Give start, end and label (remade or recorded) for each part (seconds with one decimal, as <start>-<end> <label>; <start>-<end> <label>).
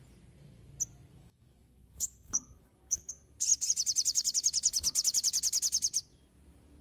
0.0-1.2 recorded; 1.2-3.1 remade; 3.1-6.8 recorded